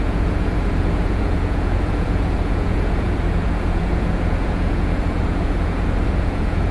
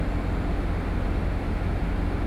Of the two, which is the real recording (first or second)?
second